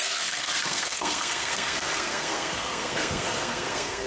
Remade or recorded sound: remade